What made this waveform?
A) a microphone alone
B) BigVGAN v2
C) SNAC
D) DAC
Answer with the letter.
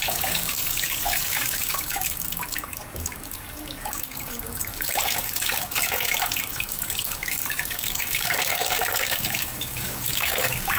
D